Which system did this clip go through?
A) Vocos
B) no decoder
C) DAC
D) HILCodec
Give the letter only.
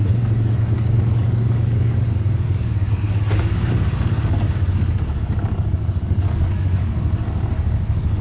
C